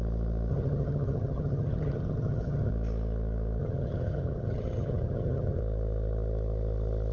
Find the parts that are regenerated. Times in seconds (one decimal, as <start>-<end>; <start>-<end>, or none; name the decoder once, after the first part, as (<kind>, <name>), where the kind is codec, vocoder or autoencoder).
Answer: 0.5-2.7 (vocoder, HiFi-GAN); 3.6-5.6